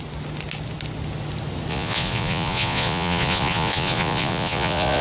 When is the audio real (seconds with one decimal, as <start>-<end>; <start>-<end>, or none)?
0.0-1.7